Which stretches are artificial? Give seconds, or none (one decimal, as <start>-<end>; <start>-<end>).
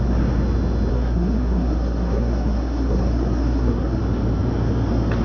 0.9-4.0